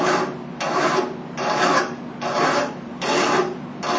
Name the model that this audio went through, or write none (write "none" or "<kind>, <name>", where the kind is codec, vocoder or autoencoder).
none